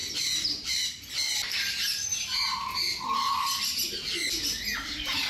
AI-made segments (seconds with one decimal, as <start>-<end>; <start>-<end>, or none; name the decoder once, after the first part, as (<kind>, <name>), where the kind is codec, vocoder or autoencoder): none